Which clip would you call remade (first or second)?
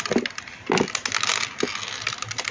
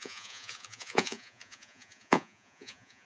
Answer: second